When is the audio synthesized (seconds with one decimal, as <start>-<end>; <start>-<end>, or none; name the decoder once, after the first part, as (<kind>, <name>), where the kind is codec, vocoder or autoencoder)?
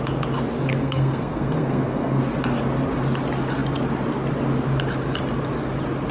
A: 0.8-2.2 (codec, SNAC)